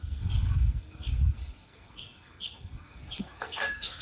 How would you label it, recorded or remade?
remade